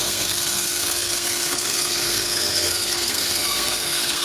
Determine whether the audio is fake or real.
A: fake